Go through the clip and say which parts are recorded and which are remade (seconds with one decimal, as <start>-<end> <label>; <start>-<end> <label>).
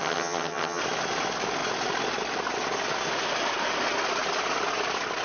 0.0-0.8 remade; 0.8-5.2 recorded